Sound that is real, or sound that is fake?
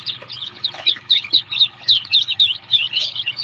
fake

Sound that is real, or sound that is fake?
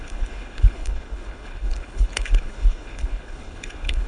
fake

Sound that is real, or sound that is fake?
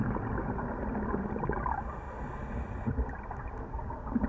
real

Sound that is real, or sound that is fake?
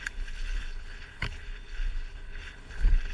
fake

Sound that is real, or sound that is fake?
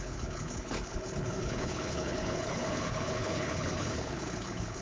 fake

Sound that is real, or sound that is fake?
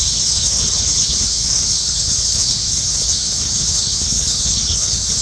fake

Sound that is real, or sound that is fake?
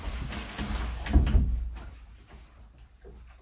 real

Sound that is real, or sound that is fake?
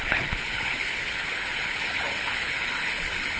fake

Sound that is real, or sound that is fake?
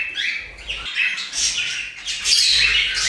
real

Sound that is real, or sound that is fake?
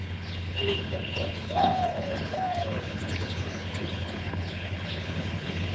fake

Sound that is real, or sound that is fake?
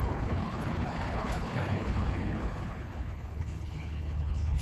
fake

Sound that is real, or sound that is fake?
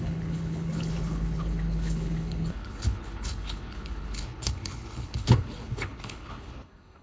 fake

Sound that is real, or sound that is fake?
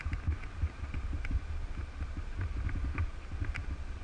real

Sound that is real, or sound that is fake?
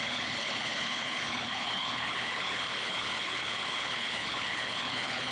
fake